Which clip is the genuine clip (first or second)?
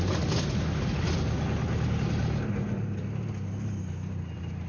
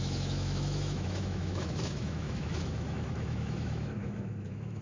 first